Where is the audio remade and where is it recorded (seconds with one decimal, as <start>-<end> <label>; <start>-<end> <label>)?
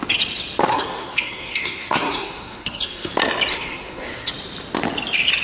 0.0-0.7 recorded; 0.7-3.1 remade; 3.1-3.5 recorded; 3.5-4.3 remade; 4.3-5.4 recorded